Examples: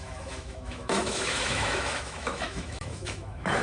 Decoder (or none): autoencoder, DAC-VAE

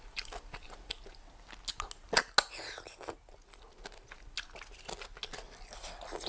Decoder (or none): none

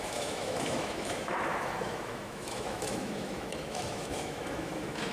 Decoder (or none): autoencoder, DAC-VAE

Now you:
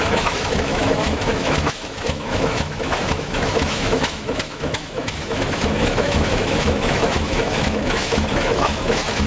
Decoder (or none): autoencoder, DAC-VAE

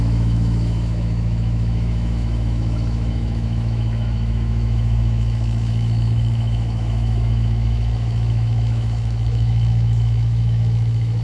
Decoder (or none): autoencoder, DAC-VAE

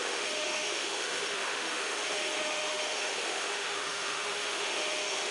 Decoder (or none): autoencoder, DAC-VAE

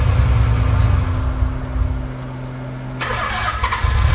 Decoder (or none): none